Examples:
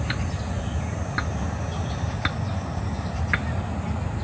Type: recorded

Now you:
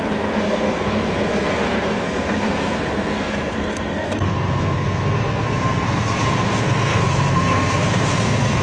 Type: remade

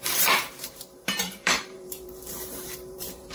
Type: remade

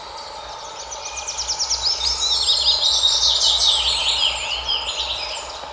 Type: recorded